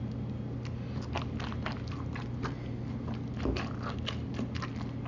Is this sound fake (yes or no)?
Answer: no